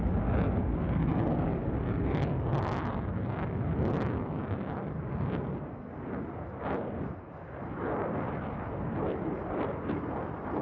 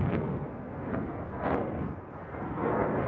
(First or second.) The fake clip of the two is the second